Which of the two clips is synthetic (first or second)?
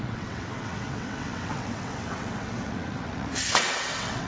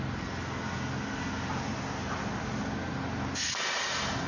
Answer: first